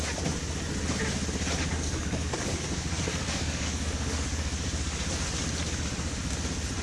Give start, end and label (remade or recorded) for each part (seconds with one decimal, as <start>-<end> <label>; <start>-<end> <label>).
0.0-1.7 recorded; 1.7-5.0 remade; 5.0-6.8 recorded